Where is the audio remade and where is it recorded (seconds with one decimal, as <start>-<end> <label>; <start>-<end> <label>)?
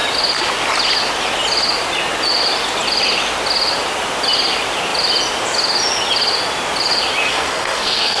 0.0-7.3 recorded; 7.3-8.2 remade